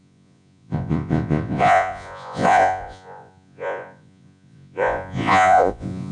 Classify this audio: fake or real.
fake